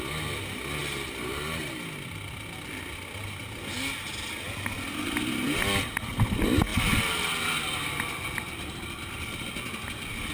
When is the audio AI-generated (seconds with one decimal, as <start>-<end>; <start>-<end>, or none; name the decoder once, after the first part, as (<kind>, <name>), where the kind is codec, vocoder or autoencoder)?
0.8-1.6 (vocoder, BigVGAN v2); 6.7-7.2